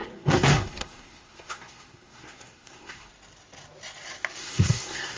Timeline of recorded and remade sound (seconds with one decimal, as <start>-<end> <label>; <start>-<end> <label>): 0.0-3.1 remade; 3.1-4.4 recorded; 4.4-5.2 remade